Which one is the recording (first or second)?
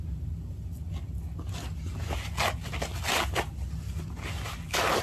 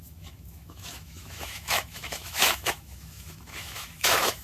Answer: first